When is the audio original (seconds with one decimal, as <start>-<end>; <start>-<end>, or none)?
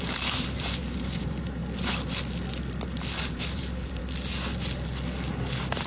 1.6-3.3; 4.0-5.5